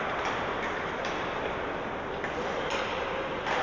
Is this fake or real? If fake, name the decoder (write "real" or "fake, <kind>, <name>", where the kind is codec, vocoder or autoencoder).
fake, vocoder, BigVGAN v2